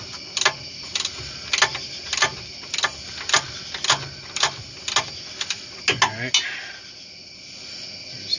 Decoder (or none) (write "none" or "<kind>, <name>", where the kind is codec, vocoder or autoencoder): none